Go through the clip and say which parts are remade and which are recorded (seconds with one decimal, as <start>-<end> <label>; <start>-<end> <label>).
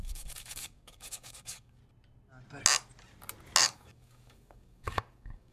0.0-1.8 remade; 1.8-3.6 recorded; 3.6-5.5 remade